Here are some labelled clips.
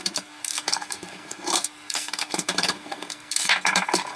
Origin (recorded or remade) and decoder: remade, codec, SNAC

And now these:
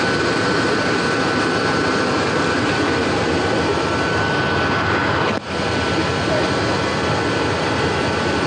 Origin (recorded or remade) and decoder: recorded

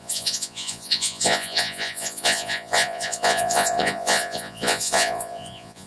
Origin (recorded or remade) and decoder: remade, vocoder, Vocos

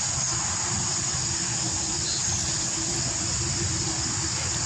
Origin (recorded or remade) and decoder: recorded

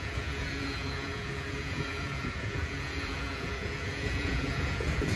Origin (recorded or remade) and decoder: remade, vocoder, Vocos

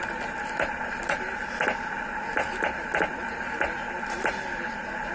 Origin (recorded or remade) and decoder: recorded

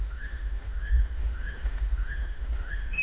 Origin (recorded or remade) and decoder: remade, autoencoder, DAC-VAE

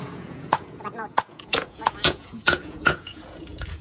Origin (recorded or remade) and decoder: remade, vocoder, Vocos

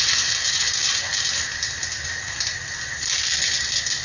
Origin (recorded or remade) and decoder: recorded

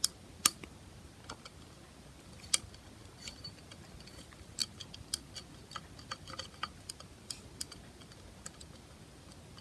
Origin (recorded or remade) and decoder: recorded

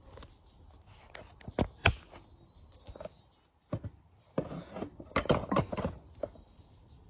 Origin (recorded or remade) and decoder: recorded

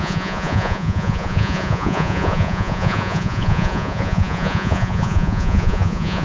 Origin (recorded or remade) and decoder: remade, vocoder, Vocos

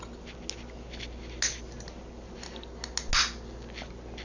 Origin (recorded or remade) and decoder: recorded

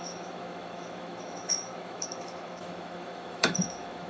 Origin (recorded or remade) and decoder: remade, autoencoder, DAC-VAE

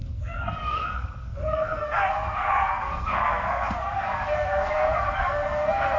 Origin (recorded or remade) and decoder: remade, codec, SNAC